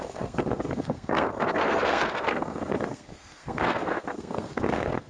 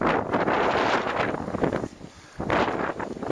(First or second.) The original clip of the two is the second